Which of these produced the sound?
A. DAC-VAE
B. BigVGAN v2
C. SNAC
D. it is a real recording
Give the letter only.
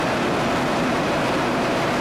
B